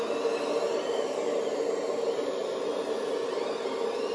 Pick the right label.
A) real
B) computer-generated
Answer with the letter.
A